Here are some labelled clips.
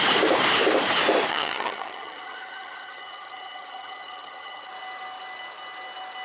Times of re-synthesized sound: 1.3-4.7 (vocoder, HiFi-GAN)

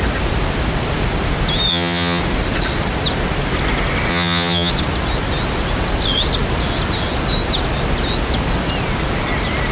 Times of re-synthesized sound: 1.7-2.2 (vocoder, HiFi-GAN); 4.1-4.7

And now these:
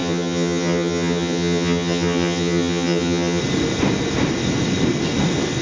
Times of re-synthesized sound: 0.0-3.4 (vocoder, HiFi-GAN)

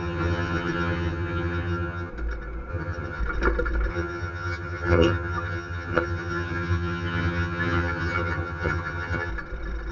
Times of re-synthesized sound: 0.0-2.1 (vocoder, HiFi-GAN); 2.7-3.2; 3.9-9.3

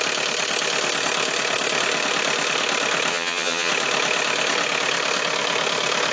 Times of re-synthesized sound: 3.1-3.7 (vocoder, HiFi-GAN)